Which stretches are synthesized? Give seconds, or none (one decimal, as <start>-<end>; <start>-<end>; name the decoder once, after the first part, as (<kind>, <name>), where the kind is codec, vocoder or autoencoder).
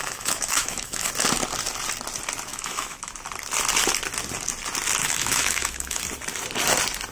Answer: 0.0-1.1 (autoencoder, DAC-VAE); 2.5-3.1; 5.0-6.0